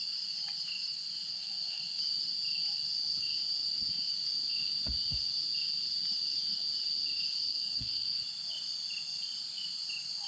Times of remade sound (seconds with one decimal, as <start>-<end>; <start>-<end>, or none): 1.3-1.8; 7.5-8.2